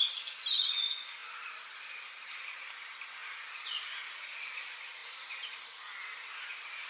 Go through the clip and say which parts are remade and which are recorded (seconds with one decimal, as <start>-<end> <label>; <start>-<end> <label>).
0.0-6.9 recorded